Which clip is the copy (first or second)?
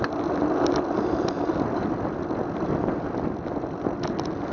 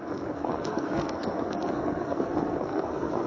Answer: second